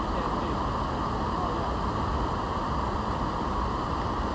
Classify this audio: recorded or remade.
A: recorded